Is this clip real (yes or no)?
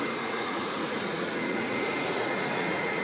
no